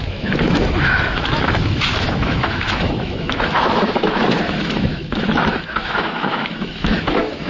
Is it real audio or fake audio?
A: fake